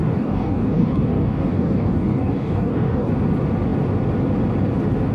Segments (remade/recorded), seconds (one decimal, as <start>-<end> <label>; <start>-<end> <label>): 0.0-3.1 remade; 3.1-5.1 recorded